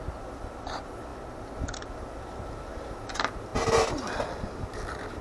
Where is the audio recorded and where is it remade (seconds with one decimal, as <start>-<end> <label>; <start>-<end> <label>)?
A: 0.0-1.1 remade; 1.1-1.6 recorded; 1.6-3.5 remade; 3.5-4.5 recorded; 4.5-5.2 remade